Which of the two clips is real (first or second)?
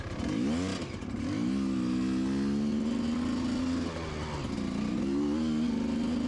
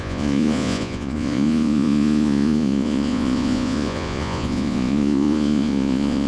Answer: first